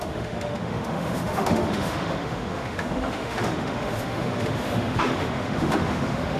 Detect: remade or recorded remade